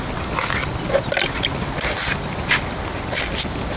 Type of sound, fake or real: real